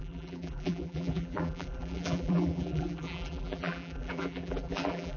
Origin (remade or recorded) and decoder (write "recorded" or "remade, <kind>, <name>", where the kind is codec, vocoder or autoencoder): remade, vocoder, BigVGAN v2